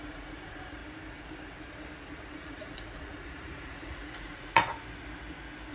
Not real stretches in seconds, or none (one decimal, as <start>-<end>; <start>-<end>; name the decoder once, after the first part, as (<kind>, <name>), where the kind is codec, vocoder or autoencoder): 0.0-0.8 (vocoder, Vocos); 2.3-4.7